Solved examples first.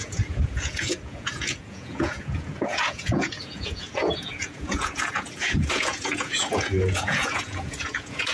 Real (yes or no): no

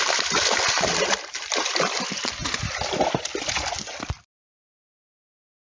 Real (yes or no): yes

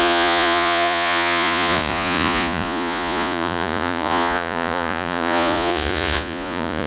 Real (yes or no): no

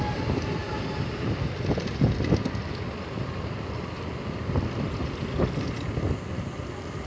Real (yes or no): yes